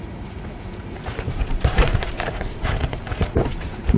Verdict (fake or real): fake